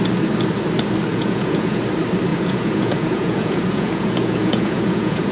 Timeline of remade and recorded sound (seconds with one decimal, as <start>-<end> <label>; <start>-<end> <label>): 0.0-1.1 recorded; 1.1-1.8 remade; 1.8-2.3 recorded; 2.3-5.3 remade